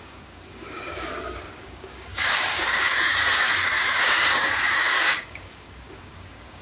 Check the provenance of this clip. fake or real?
fake